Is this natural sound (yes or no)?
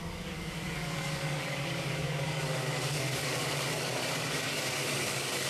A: no